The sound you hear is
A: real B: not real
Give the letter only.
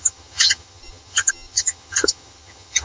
B